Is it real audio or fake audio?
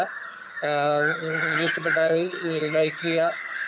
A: fake